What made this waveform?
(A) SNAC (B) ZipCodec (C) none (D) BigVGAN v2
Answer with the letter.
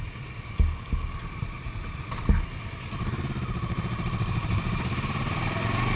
C